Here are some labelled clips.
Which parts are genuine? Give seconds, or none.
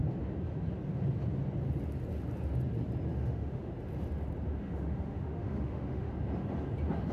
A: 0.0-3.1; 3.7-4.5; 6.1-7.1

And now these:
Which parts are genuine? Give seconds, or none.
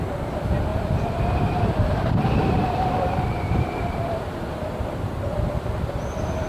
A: 0.0-0.7; 1.3-2.4; 3.8-6.5